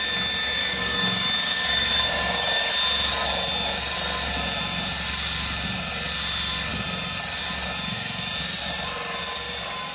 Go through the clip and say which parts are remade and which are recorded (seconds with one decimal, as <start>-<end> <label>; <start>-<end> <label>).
0.0-0.6 recorded; 0.6-2.7 remade; 2.7-9.9 recorded